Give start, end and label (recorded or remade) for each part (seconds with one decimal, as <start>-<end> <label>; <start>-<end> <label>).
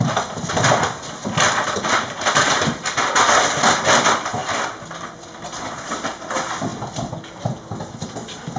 0.0-8.6 recorded